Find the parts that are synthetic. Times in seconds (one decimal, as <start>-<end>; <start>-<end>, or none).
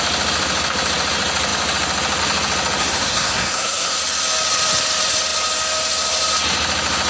2.8-4.0